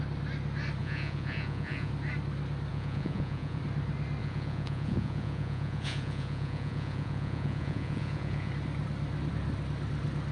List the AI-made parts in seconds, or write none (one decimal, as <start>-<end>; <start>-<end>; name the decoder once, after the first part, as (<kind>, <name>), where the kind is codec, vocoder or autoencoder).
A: 0.8-1.9 (vocoder, Vocos); 2.7-3.6; 4.2-8.5